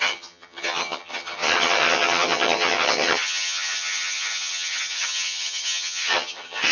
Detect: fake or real fake